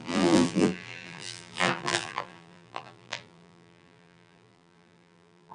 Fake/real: fake